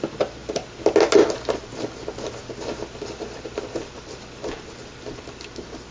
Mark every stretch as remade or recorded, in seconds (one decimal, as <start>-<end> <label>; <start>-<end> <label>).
0.0-5.9 recorded